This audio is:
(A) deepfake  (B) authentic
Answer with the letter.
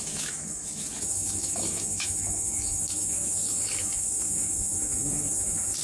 A